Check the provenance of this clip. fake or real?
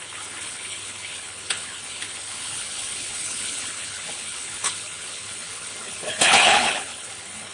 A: fake